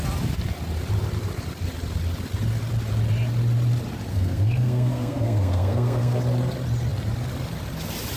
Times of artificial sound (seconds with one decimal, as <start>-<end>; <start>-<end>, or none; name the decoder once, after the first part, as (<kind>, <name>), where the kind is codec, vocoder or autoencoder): 4.1-6.2 (codec, SNAC)